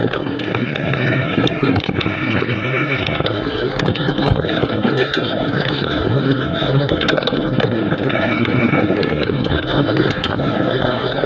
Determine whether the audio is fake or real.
fake